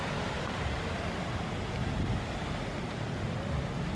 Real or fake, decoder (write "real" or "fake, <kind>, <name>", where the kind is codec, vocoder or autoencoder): real